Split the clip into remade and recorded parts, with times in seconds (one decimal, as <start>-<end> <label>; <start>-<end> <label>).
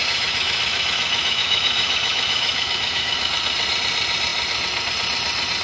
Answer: 0.0-3.3 remade; 3.3-5.6 recorded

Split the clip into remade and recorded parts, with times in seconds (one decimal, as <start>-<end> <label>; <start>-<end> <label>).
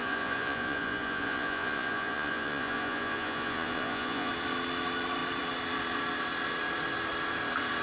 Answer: 0.0-4.3 remade; 4.3-7.8 recorded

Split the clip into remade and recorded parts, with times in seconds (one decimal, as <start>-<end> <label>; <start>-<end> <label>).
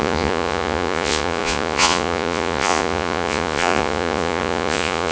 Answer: 0.0-5.1 remade